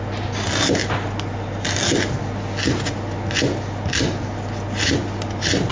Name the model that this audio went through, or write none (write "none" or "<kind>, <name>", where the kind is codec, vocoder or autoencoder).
none